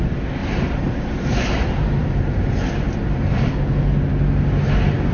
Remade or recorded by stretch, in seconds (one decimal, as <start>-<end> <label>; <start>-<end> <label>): 0.0-0.4 recorded; 0.4-3.5 remade; 3.5-5.1 recorded